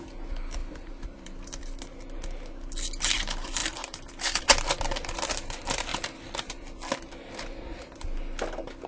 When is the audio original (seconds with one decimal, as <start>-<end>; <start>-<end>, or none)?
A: 0.0-0.6; 1.8-3.6; 4.4-5.9; 7.1-8.9